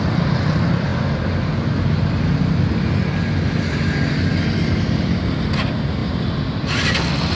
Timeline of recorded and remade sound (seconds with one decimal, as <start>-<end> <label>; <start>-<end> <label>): 0.0-7.3 recorded